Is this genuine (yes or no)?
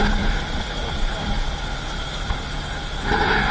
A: yes